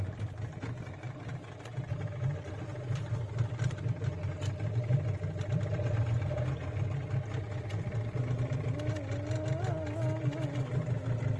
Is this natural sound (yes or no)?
yes